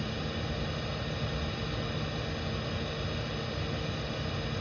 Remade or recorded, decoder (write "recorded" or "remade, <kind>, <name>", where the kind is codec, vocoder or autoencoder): recorded